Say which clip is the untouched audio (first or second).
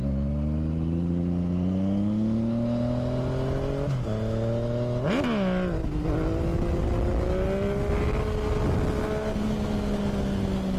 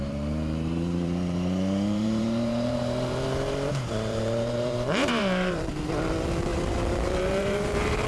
first